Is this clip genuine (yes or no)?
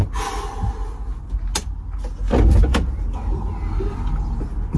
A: yes